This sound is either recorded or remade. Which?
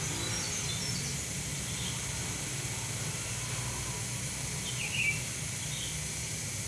recorded